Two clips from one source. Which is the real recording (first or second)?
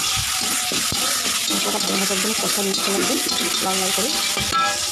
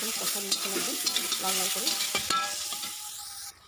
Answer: first